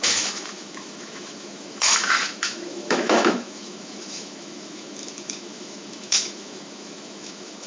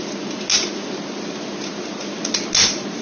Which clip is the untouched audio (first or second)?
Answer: second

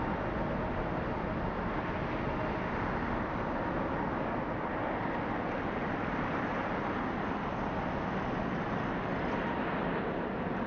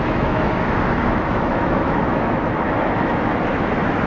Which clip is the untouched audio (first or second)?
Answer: first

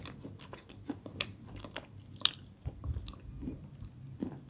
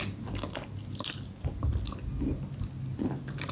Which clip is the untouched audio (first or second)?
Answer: second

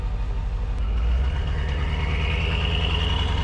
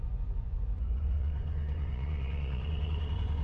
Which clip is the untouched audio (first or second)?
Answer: first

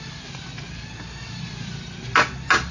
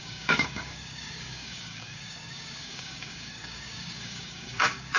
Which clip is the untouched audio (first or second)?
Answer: first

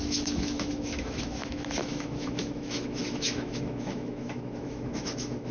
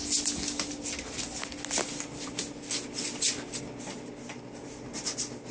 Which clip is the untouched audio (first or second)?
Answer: second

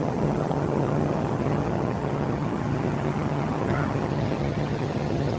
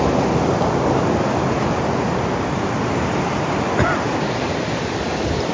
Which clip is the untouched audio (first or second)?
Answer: second